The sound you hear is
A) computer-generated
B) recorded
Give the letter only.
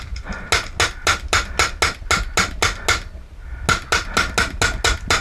B